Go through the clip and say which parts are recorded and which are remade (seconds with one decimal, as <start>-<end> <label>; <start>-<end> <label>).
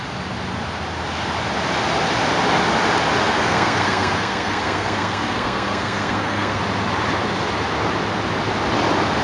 0.0-3.2 recorded; 3.2-6.6 remade; 6.6-9.2 recorded